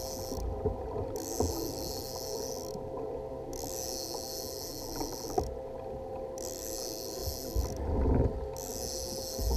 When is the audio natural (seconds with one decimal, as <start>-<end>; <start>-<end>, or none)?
0.0-9.6